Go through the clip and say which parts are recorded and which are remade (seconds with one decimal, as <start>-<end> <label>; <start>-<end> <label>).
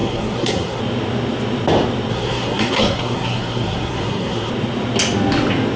0.0-0.8 remade; 0.8-2.1 recorded; 2.1-4.5 remade; 4.5-5.8 recorded